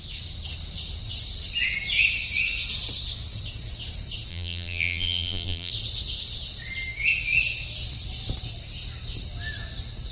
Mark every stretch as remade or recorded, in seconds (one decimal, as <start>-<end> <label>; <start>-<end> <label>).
0.0-4.3 recorded; 4.3-5.7 remade; 5.7-10.1 recorded